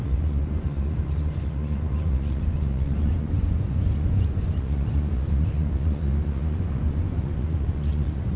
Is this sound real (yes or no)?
no